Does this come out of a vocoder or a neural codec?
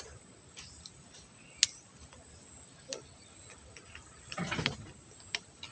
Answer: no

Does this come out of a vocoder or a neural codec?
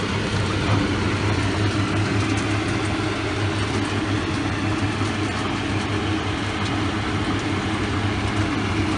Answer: no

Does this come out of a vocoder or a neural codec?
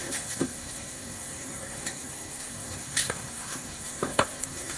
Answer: yes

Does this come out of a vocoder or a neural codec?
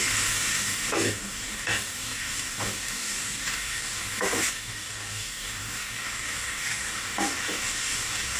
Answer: yes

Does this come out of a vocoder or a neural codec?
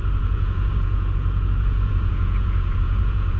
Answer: yes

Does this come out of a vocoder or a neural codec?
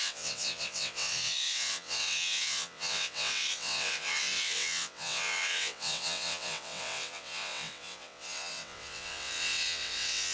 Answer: yes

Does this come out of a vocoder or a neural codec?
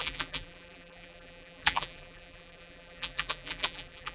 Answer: yes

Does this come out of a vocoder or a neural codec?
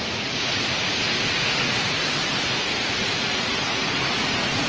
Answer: yes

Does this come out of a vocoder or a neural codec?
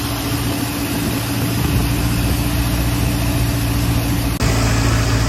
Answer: no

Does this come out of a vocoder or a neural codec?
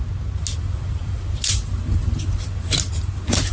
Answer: no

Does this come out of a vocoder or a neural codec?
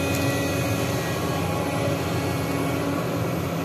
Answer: no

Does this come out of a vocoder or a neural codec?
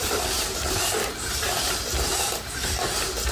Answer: yes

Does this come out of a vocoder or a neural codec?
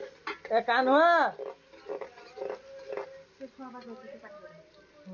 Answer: no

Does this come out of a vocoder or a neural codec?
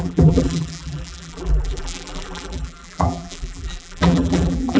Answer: yes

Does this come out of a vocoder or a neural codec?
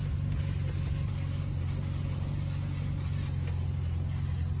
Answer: no